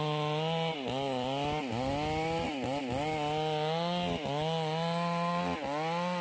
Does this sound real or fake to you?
real